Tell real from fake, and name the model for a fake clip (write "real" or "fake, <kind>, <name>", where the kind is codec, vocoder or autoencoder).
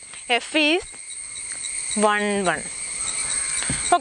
real